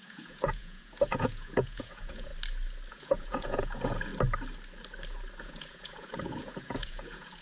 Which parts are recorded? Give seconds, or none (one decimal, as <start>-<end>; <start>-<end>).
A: 2.3-2.9; 4.1-5.4